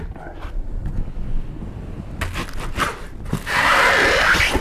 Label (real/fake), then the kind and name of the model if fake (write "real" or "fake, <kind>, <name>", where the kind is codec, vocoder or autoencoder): real